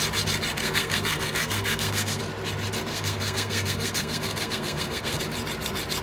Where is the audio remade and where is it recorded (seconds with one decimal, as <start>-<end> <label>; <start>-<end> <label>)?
0.0-0.6 recorded; 0.6-2.2 remade; 2.2-2.9 recorded; 2.9-5.2 remade; 5.2-6.0 recorded